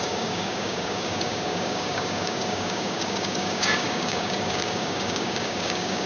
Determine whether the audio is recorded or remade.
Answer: remade